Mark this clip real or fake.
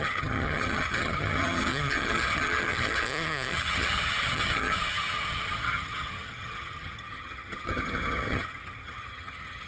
fake